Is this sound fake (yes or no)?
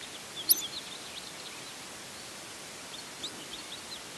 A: no